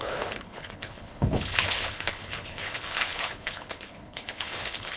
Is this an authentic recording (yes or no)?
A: no